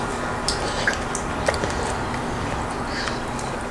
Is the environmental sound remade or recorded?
recorded